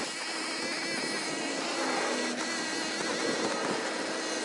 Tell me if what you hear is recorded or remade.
recorded